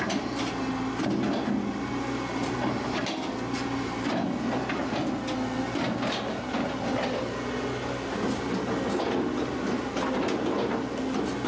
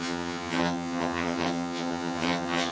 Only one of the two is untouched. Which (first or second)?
first